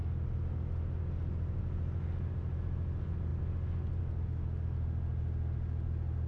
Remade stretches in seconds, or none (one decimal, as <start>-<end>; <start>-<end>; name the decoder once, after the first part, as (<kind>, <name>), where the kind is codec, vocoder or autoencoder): none